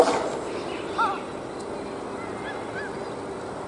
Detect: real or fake real